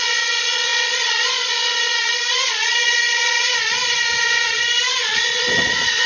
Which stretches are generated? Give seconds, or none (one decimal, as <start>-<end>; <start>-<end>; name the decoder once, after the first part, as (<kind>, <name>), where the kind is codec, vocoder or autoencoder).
0.0-6.1 (vocoder, Vocos)